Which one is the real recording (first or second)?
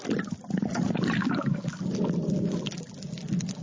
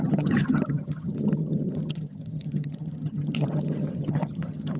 first